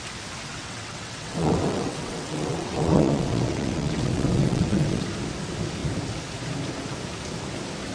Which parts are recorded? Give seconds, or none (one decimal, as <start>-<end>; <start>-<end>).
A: 0.0-0.5; 5.0-7.9